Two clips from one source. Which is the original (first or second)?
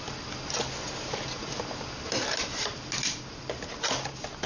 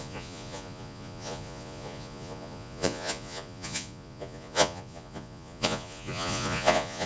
first